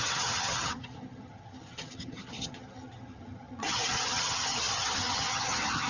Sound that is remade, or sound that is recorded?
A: remade